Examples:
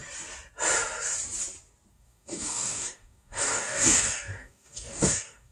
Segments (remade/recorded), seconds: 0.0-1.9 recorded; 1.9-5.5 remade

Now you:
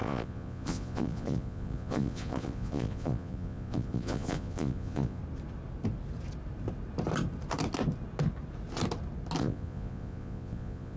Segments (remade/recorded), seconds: 0.0-5.2 remade; 5.2-9.4 recorded; 9.4-11.0 remade

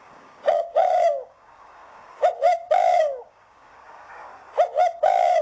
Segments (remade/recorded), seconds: 0.0-4.3 remade; 4.3-5.0 recorded; 5.0-5.4 remade

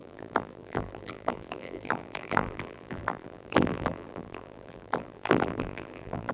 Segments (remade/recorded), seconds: 0.0-6.3 remade